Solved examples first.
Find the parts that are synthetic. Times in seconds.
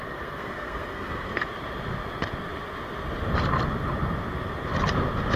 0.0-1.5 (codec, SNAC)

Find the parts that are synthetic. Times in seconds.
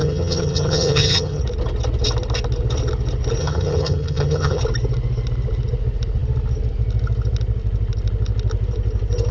0.0-1.4 (vocoder, HiFi-GAN); 3.4-4.6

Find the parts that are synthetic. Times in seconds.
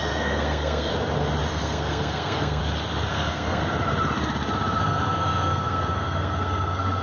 0.0-0.9 (codec, SNAC); 1.5-2.6; 3.1-3.6; 4.8-7.0